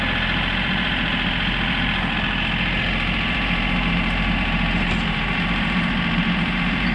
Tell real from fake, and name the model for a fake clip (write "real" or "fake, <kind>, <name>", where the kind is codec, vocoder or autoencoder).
fake, vocoder, BigVGAN v2